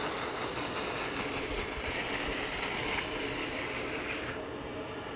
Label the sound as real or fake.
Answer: real